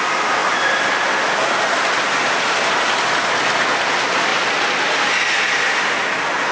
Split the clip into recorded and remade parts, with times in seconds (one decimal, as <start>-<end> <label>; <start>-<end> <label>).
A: 0.0-6.5 recorded